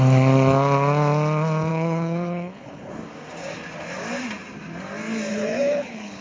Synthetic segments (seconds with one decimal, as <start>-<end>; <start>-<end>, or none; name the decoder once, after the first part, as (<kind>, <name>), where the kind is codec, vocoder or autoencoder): 1.7-2.9 (codec, HILCodec); 5.3-6.2